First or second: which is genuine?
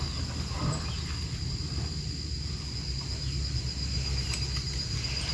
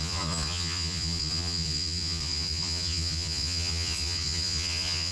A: first